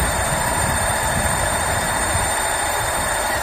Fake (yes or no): yes